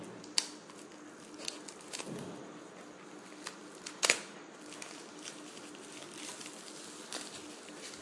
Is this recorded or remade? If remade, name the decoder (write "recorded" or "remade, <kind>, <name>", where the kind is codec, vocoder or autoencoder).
recorded